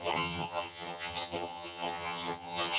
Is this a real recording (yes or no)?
no